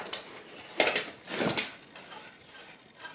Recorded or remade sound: recorded